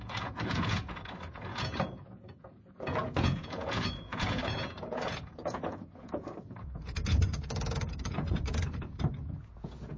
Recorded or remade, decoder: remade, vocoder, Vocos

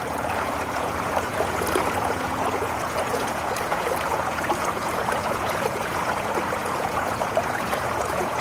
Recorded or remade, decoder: remade, vocoder, Vocos